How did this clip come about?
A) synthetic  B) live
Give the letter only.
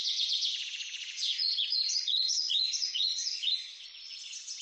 A